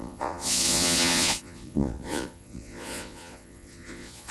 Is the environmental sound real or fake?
fake